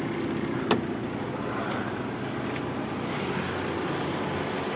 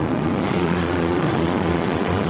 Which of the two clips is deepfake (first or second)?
second